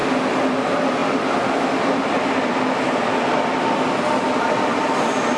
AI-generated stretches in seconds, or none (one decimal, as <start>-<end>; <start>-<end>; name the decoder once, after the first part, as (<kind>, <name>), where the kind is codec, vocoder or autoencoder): none